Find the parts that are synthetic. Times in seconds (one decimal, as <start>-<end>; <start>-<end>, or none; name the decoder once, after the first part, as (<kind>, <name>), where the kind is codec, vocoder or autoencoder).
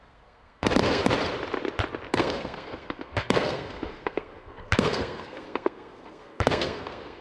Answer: 0.0-1.0 (codec, SNAC); 2.1-7.2